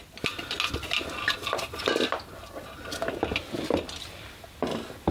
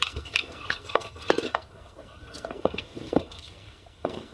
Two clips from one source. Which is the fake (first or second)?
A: second